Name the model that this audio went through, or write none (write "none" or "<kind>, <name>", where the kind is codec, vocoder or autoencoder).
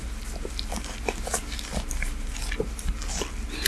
none